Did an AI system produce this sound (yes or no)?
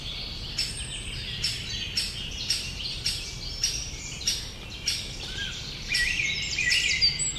no